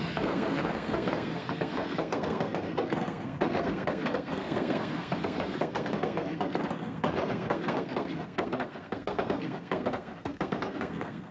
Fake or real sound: fake